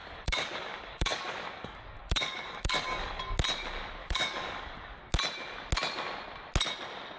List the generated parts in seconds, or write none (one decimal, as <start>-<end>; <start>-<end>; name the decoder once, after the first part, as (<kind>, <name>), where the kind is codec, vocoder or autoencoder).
0.0-3.2 (codec, DAC); 4.0-5.0